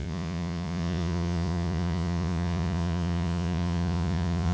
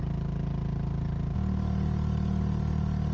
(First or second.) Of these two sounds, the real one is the second